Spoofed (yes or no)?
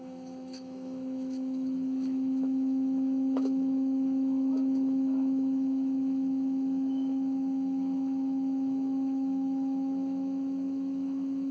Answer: yes